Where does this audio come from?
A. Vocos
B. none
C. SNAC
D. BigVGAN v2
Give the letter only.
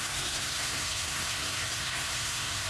C